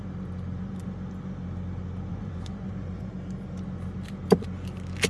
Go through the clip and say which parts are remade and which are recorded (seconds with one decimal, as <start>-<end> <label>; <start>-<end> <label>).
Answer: 0.0-2.1 recorded; 2.1-3.1 remade; 3.1-5.1 recorded